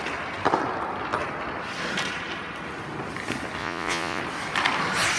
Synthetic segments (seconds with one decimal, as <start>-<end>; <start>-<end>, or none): 3.6-4.2